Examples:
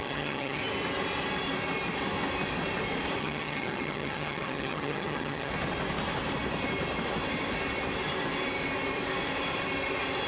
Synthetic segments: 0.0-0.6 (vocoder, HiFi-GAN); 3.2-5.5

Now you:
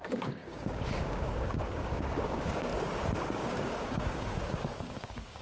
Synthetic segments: 0.0-2.7 (codec, DAC); 3.3-5.4

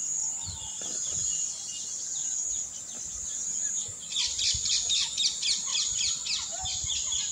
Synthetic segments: none

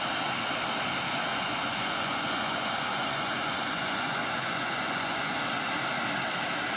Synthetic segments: 1.3-5.4 (vocoder, Vocos)

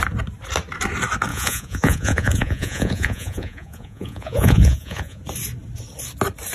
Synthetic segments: 1.3-5.2 (vocoder, Vocos)

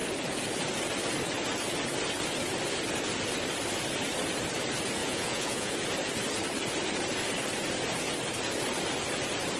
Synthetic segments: 5.0-5.7 (vocoder, Vocos)